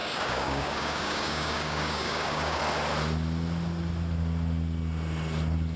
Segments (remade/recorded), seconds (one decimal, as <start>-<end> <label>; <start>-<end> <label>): 0.0-2.6 remade; 2.6-5.8 recorded